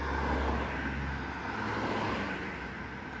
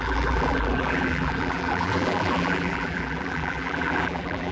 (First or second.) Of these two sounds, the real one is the first